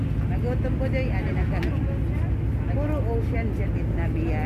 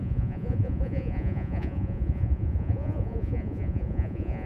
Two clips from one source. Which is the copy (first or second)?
second